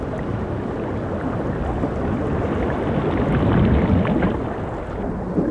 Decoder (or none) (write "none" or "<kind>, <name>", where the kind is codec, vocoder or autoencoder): none